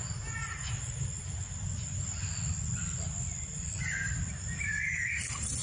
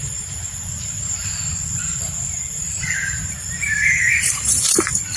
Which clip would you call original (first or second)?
first